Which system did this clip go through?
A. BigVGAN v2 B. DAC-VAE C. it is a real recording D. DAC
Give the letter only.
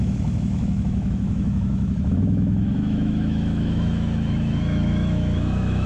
B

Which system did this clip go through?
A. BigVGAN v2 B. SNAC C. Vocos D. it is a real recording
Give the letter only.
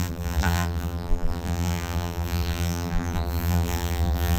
A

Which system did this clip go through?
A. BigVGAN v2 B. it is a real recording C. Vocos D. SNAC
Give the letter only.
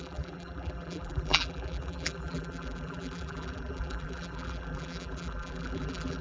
A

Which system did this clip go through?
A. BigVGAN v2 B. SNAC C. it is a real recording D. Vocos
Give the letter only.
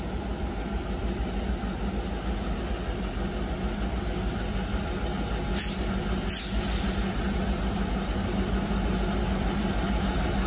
C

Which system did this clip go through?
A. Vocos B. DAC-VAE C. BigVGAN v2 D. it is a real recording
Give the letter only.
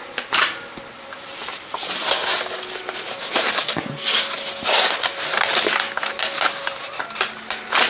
C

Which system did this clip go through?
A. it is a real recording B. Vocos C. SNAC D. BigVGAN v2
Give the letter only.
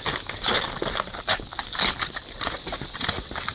A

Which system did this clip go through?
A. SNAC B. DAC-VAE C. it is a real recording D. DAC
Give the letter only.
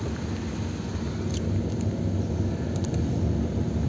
C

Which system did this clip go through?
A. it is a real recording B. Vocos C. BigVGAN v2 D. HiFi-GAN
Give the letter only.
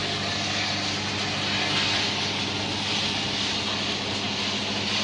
A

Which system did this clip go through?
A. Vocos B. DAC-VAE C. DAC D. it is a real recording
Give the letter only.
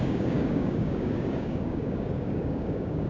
C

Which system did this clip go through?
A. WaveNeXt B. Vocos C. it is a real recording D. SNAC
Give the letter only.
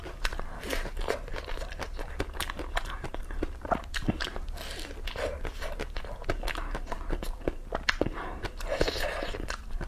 C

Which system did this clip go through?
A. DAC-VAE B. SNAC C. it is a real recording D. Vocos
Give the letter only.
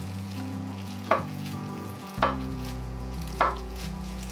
D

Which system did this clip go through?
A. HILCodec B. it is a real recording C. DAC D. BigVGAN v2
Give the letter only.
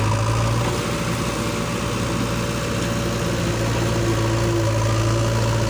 B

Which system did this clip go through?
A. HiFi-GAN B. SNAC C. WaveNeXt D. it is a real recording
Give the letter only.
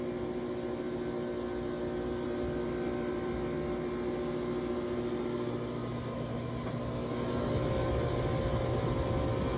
D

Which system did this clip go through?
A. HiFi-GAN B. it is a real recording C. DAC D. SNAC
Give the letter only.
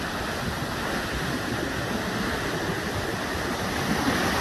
B